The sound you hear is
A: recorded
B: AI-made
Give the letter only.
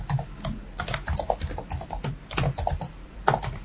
A